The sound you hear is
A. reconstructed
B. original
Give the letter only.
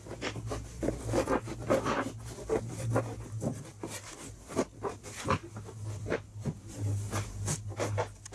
B